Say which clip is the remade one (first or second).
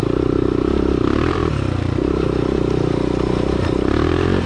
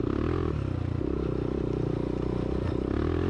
first